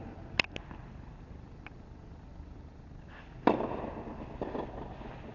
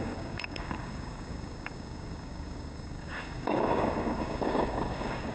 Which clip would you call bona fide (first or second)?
first